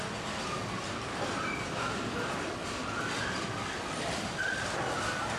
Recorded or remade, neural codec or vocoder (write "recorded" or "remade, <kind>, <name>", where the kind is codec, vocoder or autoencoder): recorded